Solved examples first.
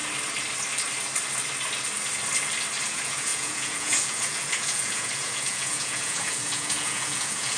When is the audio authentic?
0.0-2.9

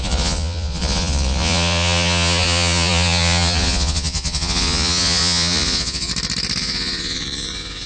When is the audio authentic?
6.1-6.6